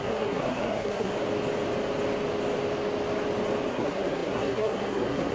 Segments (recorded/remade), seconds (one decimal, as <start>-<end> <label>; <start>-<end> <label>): 0.0-1.1 remade; 1.1-3.7 recorded; 3.7-5.3 remade